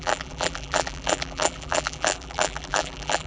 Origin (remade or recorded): remade